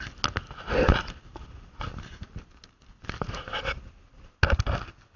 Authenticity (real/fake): real